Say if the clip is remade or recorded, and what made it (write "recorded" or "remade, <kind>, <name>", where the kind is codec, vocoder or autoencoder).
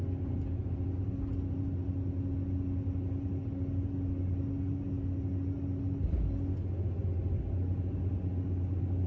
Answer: recorded